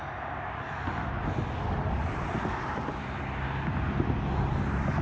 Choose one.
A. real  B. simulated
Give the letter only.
A